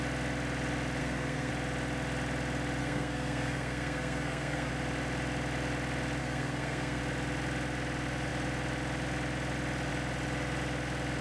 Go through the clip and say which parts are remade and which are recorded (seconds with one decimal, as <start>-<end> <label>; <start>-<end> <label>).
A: 0.0-1.0 recorded; 1.0-1.5 remade; 1.5-2.8 recorded; 2.8-4.7 remade; 4.7-6.2 recorded; 6.2-7.0 remade; 7.0-11.2 recorded

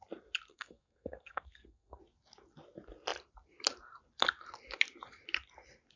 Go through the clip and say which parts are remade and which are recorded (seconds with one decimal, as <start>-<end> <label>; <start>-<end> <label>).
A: 0.0-0.5 recorded; 0.5-2.0 remade; 2.0-6.0 recorded

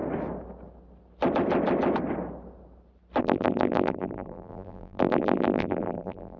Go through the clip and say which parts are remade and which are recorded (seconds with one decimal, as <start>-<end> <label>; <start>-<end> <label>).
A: 0.0-3.2 recorded; 3.2-6.4 remade

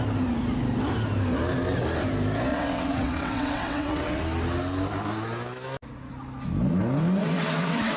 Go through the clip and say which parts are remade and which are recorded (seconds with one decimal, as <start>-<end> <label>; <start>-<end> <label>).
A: 0.0-2.5 recorded; 2.5-4.2 remade; 4.2-7.2 recorded; 7.2-8.0 remade

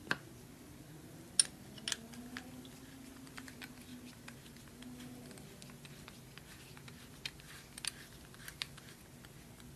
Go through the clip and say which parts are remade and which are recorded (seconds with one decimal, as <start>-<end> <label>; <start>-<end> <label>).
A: 0.0-9.8 recorded

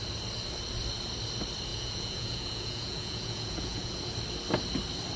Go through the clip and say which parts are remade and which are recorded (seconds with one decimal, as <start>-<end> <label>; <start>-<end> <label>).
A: 0.0-1.7 recorded; 1.7-4.0 remade; 4.0-5.2 recorded

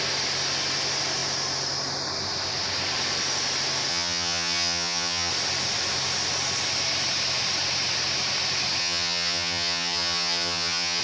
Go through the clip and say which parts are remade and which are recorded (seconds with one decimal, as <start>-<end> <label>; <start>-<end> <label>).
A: 0.0-3.9 recorded; 3.9-5.3 remade; 5.3-8.8 recorded; 8.8-11.0 remade

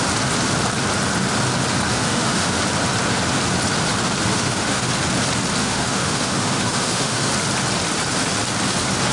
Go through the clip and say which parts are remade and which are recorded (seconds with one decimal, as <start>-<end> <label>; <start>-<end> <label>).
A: 0.0-1.9 recorded; 1.9-2.6 remade; 2.6-4.3 recorded; 4.3-4.9 remade; 4.9-5.6 recorded; 5.6-7.3 remade; 7.3-9.1 recorded